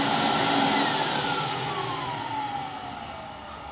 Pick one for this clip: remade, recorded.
recorded